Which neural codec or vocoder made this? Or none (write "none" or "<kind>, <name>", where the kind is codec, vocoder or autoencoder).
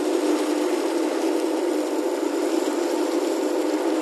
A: none